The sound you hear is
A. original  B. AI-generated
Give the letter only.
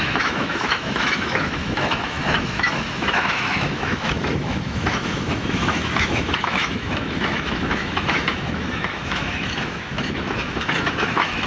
B